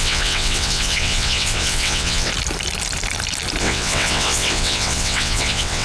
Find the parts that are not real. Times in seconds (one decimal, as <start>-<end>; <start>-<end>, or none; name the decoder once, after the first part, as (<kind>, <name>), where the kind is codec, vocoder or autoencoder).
0.0-2.3 (vocoder, WaveNeXt); 3.6-5.8